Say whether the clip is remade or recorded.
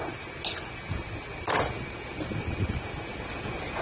recorded